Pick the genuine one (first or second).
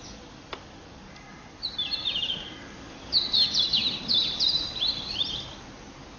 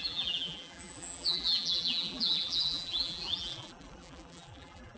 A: first